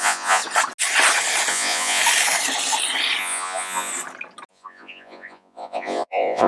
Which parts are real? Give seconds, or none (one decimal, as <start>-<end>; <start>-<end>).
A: 0.4-1.5; 2.0-3.2; 3.9-4.5